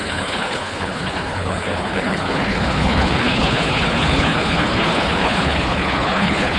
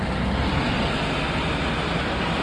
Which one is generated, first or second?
first